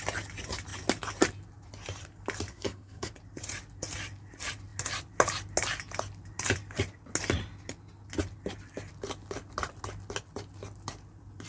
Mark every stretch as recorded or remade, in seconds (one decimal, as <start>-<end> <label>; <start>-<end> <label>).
0.0-2.5 recorded; 2.5-3.1 remade; 3.1-11.5 recorded